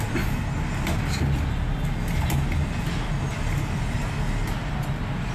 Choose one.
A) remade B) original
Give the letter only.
B